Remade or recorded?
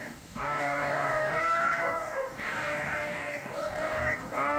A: remade